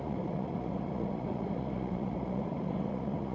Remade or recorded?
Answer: remade